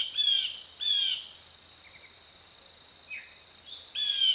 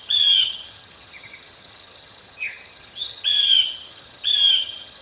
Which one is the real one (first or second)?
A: first